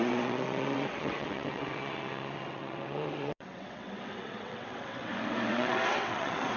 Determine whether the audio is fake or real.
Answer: fake